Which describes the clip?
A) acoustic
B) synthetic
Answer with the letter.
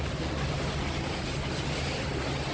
A